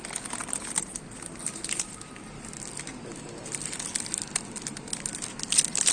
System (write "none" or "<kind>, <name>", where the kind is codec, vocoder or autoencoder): none